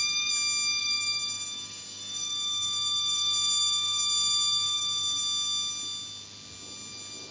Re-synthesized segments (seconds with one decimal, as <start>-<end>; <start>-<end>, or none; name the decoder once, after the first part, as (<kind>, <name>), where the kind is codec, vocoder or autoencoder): 0.8-5.2 (codec, DAC)